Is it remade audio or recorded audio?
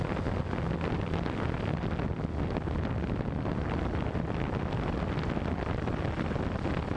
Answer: recorded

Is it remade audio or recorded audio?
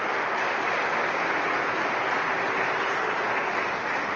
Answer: recorded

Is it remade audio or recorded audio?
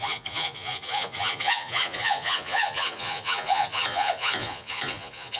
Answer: remade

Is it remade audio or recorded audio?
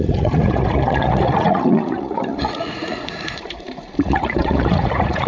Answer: remade